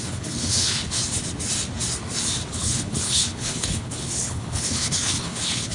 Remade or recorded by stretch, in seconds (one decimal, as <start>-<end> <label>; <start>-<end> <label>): 0.0-1.0 remade; 1.0-2.5 recorded; 2.5-5.7 remade